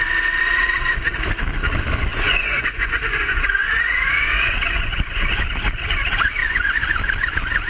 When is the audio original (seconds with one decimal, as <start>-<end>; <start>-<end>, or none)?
0.0-2.1; 5.3-6.4; 6.9-7.7